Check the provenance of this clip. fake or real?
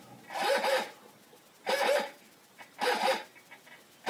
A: real